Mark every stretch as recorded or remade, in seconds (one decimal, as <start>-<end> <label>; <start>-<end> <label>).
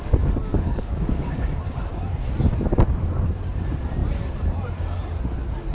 0.0-0.5 recorded; 0.5-1.6 remade; 1.6-5.7 recorded